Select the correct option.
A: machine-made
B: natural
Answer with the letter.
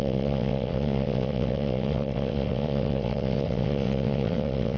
A